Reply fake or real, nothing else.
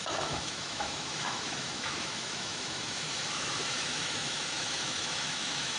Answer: fake